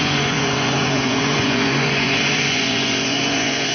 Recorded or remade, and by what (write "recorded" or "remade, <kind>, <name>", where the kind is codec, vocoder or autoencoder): remade, vocoder, Vocos